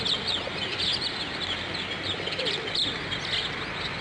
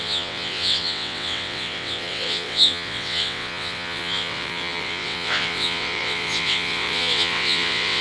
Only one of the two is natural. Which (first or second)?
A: first